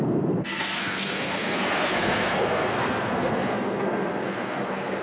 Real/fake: fake